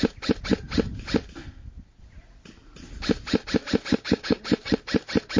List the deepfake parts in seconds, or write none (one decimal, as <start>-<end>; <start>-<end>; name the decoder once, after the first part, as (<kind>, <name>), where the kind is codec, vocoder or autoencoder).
3.9-4.7 (codec, DAC)